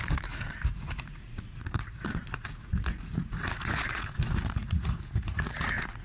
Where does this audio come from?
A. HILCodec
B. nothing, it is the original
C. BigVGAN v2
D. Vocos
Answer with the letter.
D